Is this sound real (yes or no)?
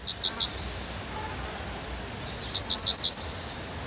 yes